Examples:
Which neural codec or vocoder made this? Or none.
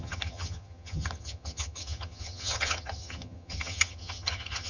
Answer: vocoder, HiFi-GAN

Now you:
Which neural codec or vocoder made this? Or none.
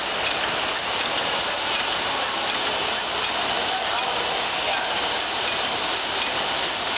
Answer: none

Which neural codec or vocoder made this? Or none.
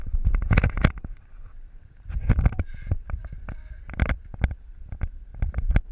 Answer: none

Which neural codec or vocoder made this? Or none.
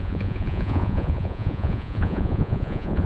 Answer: vocoder, Vocos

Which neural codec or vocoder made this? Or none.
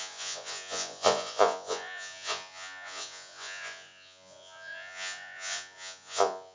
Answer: vocoder, Vocos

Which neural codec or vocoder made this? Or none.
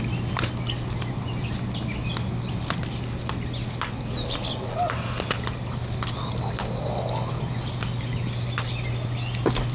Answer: none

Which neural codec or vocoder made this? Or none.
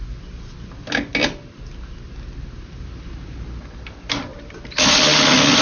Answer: none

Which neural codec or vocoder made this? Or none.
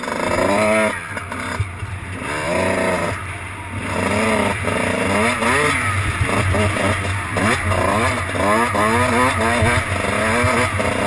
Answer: none